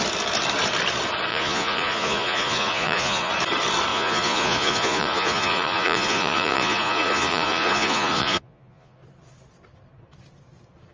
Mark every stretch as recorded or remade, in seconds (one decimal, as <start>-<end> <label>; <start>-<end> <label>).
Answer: 0.0-1.3 recorded; 1.3-3.3 remade; 3.3-3.9 recorded; 3.9-9.0 remade; 9.0-10.9 recorded